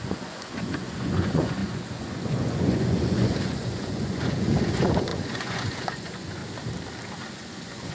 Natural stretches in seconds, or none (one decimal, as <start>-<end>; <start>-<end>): 6.4-7.3